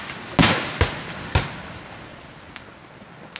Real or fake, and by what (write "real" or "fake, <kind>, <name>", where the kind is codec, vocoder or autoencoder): real